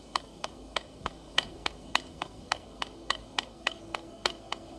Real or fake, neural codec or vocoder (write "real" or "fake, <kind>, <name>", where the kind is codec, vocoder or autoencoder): fake, codec, SNAC